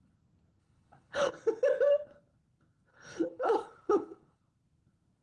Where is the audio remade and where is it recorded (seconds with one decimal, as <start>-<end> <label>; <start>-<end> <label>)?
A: 0.0-0.6 recorded; 0.6-1.3 remade; 1.3-2.9 recorded; 2.9-4.4 remade; 4.4-5.2 recorded